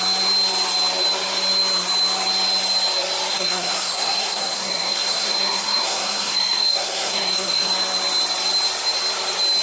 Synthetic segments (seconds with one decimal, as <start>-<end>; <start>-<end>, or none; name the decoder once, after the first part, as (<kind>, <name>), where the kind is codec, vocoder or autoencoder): 3.3-7.7 (codec, SNAC)